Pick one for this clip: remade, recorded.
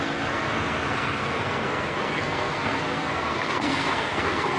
remade